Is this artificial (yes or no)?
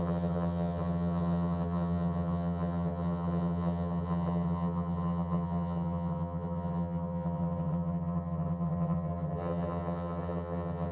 yes